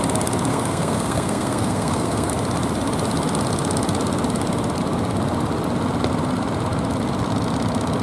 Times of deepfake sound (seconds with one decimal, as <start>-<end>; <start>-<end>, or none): 0.5-2.3